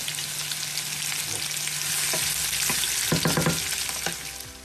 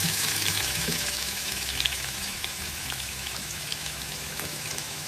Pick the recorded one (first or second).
first